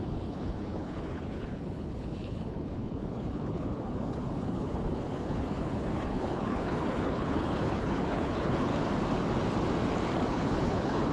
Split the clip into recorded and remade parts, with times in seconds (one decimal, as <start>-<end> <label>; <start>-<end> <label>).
0.0-8.7 remade; 8.7-10.2 recorded; 10.2-11.1 remade